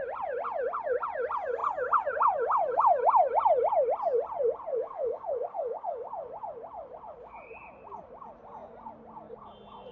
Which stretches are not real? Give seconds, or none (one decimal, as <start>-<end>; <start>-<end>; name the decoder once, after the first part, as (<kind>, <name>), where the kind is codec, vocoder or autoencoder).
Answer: 4.7-6.1 (codec, DAC)